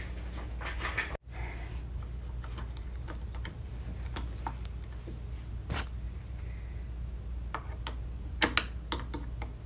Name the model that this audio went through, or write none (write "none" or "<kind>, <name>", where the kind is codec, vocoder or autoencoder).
none